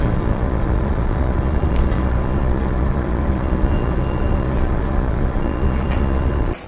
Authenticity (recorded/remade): remade